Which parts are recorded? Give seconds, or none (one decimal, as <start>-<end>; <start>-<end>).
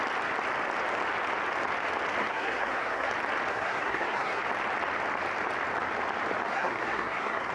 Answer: 0.0-2.2; 3.1-3.5; 4.4-6.5